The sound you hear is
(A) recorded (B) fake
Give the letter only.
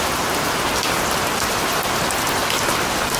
A